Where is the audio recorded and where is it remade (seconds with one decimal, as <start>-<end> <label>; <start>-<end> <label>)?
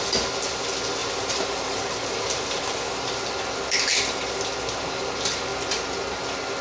0.0-1.0 recorded; 1.0-2.7 remade; 2.7-6.6 recorded